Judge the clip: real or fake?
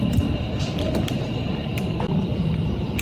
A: real